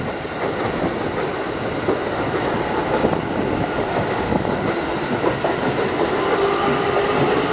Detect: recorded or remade recorded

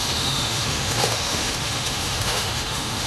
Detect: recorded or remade remade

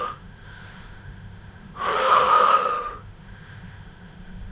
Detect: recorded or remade remade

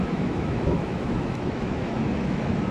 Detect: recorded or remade remade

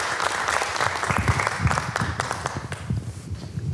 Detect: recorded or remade recorded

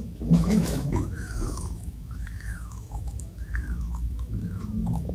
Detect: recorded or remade remade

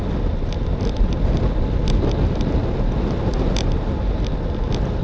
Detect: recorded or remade recorded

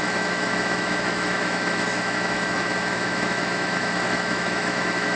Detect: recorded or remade remade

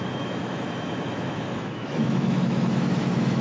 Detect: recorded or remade remade